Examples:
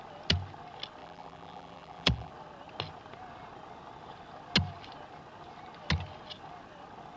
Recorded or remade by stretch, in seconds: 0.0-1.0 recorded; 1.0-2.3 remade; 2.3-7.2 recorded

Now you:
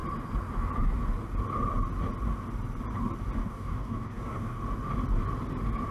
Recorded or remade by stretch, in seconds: 0.0-3.4 recorded; 3.4-4.6 remade; 4.6-5.9 recorded